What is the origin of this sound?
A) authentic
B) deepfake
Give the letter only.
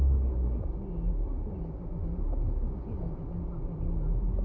A